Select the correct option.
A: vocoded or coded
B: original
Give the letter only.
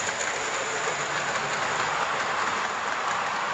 B